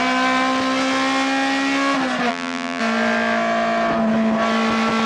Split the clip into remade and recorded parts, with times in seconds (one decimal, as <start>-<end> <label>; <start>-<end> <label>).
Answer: 0.0-2.3 recorded; 2.3-2.8 remade; 2.8-5.1 recorded